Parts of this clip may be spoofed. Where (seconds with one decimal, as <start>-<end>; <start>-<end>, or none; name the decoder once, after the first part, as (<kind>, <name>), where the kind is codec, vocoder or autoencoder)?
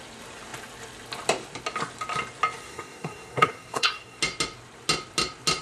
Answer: 2.6-4.2 (codec, SNAC)